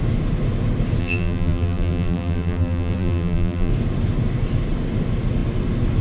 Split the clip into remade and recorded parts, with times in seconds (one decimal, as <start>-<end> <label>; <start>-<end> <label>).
0.0-1.0 recorded; 1.0-3.7 remade; 3.7-6.0 recorded